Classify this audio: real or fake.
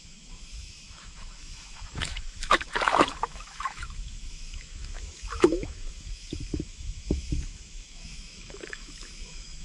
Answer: fake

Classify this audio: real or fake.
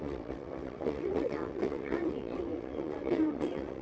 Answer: fake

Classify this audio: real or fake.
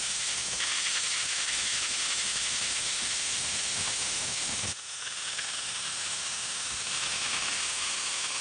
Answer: fake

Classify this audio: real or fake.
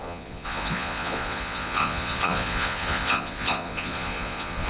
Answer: fake